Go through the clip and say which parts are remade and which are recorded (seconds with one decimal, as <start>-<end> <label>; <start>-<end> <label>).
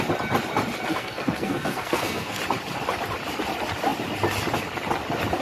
0.0-0.9 recorded; 0.9-2.4 remade; 2.4-5.4 recorded